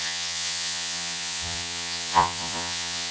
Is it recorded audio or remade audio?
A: remade